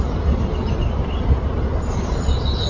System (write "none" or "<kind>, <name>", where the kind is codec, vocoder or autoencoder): none